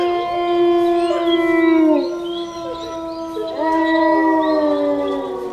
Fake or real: real